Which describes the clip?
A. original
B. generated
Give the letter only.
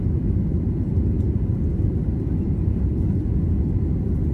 A